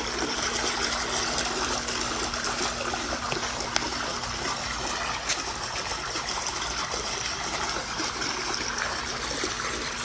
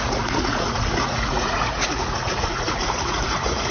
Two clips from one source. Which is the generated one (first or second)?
second